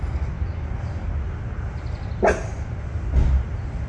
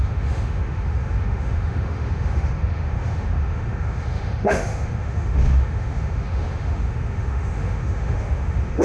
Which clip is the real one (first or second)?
first